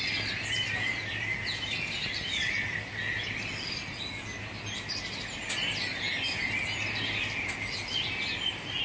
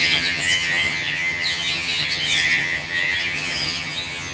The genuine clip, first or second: first